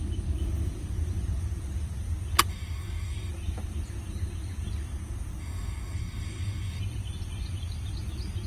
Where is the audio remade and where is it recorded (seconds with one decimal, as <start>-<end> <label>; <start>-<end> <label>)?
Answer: 0.0-2.5 recorded; 2.5-3.3 remade; 3.3-5.4 recorded; 5.4-6.8 remade; 6.8-8.5 recorded